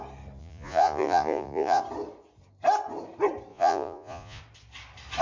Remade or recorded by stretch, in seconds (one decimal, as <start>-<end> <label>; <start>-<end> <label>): 0.0-0.4 recorded; 0.4-1.8 remade; 1.8-3.5 recorded; 3.5-4.4 remade; 4.4-5.2 recorded